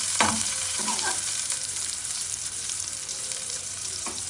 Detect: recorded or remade remade